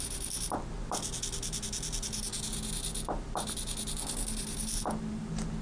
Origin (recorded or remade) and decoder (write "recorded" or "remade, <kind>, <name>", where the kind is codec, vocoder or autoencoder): recorded